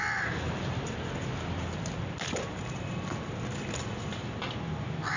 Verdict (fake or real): real